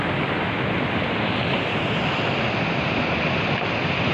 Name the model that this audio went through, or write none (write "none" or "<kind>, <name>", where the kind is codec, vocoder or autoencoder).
none